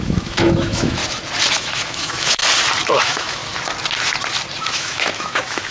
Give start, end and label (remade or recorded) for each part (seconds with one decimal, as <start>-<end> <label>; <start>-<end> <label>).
0.0-1.0 remade; 1.0-1.5 recorded; 1.5-2.4 remade; 2.4-3.0 recorded; 3.0-3.4 remade; 3.4-4.6 recorded; 4.6-5.7 remade